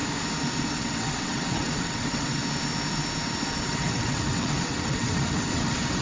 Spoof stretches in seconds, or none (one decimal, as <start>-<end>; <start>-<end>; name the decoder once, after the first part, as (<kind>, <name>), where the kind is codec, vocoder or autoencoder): 0.6-2.4 (vocoder, WaveNeXt); 3.6-6.0